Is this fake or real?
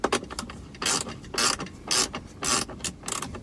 real